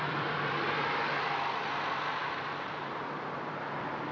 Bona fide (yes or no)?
no